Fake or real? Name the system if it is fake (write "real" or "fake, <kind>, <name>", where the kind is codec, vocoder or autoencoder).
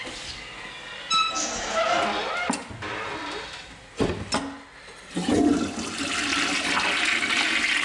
real